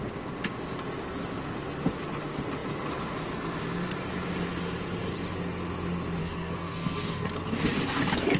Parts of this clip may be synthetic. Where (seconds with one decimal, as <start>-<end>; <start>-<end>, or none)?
6.2-7.3

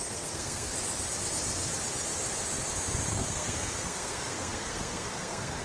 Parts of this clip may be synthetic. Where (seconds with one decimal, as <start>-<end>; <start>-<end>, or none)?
0.0-0.7; 3.1-5.6